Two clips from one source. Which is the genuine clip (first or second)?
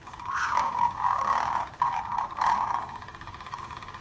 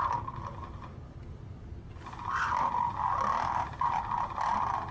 second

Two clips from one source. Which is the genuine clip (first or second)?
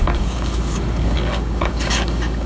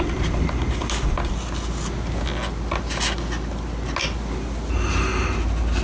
second